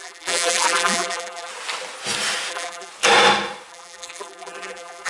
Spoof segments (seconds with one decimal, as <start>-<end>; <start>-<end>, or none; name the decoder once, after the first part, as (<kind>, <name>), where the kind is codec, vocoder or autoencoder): 0.0-1.5 (vocoder, BigVGAN v2); 2.5-2.9; 3.7-5.1